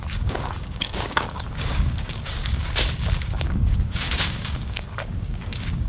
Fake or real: fake